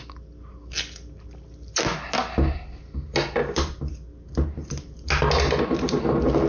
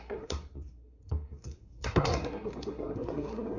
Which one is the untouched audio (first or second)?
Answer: first